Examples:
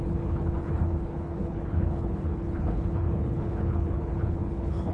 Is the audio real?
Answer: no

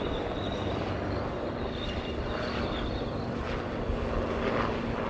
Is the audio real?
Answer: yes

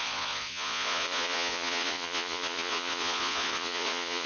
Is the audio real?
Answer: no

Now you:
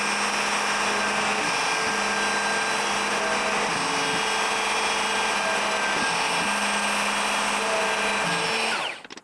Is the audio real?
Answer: yes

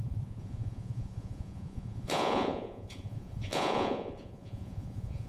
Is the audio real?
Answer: no